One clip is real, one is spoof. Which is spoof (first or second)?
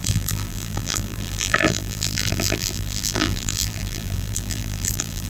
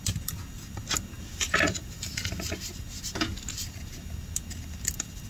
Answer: first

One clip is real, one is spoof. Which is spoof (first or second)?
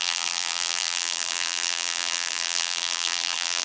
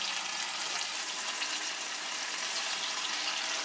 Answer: first